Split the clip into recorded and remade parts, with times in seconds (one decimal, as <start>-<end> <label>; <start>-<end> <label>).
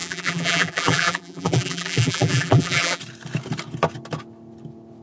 0.0-3.0 remade; 3.0-5.0 recorded